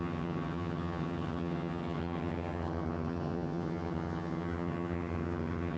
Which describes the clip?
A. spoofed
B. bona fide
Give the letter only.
A